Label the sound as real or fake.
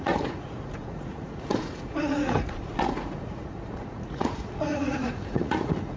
fake